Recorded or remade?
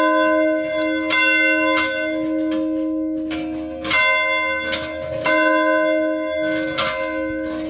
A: recorded